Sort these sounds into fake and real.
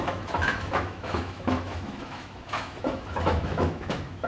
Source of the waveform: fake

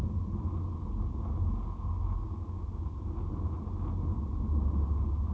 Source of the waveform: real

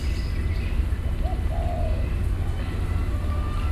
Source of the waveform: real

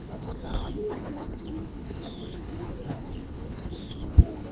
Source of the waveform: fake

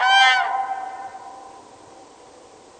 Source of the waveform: real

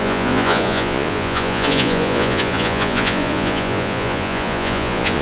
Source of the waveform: fake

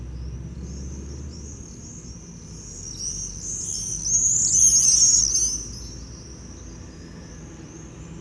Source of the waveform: real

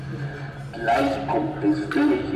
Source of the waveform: real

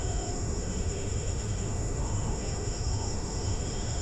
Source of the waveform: fake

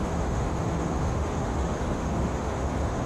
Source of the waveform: fake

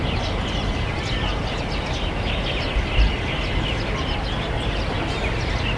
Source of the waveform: real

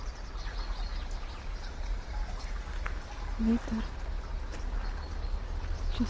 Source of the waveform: real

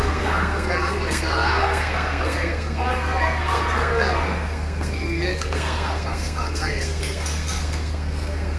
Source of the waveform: fake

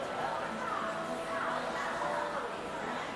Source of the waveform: real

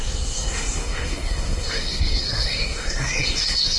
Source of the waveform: fake